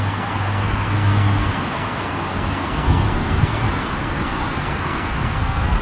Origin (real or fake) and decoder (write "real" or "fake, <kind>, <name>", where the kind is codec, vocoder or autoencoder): fake, codec, SNAC